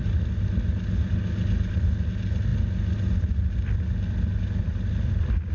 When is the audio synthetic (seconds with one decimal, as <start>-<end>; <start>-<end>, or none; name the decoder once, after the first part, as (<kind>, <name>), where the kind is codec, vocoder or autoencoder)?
none